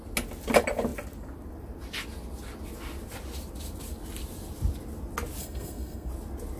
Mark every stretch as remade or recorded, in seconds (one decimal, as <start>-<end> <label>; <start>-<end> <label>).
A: 0.0-5.4 recorded; 5.4-6.1 remade; 6.1-6.6 recorded